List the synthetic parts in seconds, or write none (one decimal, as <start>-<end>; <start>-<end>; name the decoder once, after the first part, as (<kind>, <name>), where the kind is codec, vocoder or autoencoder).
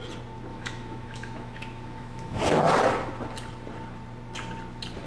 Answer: 0.5-2.4 (autoencoder, DAC-VAE)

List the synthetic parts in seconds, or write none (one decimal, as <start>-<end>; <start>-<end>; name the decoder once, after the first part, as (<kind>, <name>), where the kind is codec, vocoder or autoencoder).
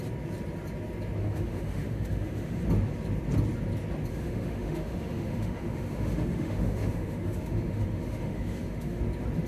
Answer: 1.2-2.6 (autoencoder, DAC-VAE); 4.1-9.0